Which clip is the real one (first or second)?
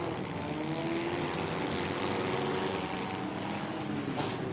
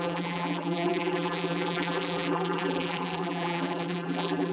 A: first